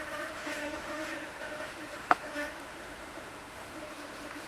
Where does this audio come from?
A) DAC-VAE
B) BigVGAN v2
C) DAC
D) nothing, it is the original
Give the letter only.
A